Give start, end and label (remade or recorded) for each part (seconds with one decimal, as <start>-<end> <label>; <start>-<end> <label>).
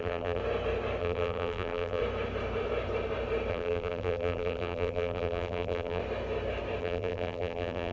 0.0-0.4 remade; 0.4-1.0 recorded; 1.0-2.0 remade; 2.0-3.5 recorded; 3.5-6.0 remade; 6.0-6.8 recorded; 6.8-7.9 remade